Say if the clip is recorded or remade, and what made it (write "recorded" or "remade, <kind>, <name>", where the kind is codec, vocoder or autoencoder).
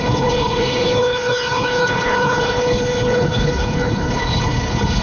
remade, codec, HILCodec